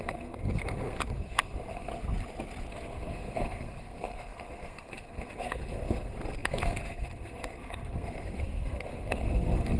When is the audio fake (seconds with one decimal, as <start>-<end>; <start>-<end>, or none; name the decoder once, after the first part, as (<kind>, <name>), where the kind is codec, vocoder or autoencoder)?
0.0-1.9 (codec, SNAC); 2.7-9.8